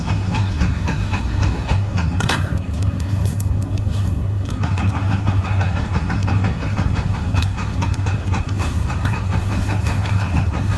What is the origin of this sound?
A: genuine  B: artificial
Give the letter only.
B